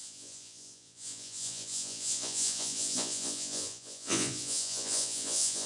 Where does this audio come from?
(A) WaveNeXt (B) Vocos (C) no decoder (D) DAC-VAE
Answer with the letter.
B